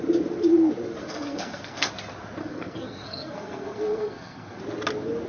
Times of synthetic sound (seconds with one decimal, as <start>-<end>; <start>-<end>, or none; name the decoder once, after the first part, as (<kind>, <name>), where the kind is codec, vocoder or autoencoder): 1.0-1.9 (codec, SNAC); 2.4-4.6